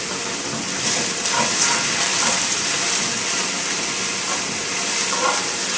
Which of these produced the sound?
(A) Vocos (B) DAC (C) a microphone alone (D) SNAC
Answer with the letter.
C